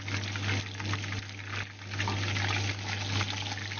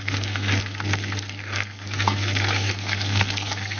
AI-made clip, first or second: second